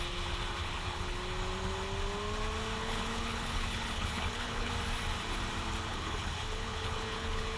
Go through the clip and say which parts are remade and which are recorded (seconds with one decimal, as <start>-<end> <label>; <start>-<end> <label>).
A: 0.0-0.6 recorded; 0.6-1.2 remade; 1.2-2.8 recorded; 2.8-4.7 remade; 4.7-5.9 recorded; 5.9-7.6 remade

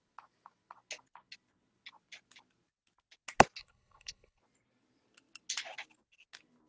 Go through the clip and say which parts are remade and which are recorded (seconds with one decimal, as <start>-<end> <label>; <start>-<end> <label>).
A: 0.0-3.6 recorded; 3.6-4.4 remade; 4.4-6.7 recorded

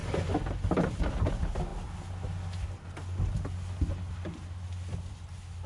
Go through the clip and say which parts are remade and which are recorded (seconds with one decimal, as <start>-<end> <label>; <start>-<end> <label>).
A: 0.0-5.7 recorded

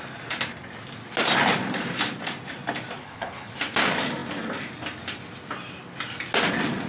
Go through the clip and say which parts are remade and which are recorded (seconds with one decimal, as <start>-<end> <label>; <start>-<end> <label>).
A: 0.0-3.0 recorded; 3.0-3.5 remade; 3.5-6.9 recorded

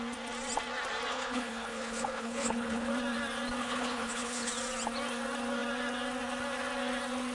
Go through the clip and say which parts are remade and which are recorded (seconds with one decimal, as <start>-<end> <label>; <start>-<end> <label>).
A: 0.0-1.1 recorded; 1.1-2.9 remade; 2.9-3.6 recorded; 3.6-4.5 remade; 4.5-7.3 recorded

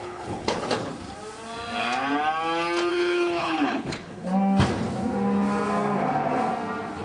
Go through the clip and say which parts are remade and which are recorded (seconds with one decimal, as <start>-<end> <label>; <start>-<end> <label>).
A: 0.0-0.9 remade; 0.9-2.9 recorded; 2.9-4.3 remade; 4.3-7.0 recorded

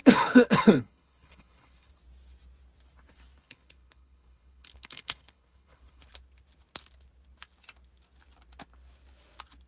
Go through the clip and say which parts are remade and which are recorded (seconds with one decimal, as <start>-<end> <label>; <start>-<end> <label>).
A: 0.0-1.9 remade; 1.9-3.4 recorded; 3.4-6.0 remade; 6.0-9.7 recorded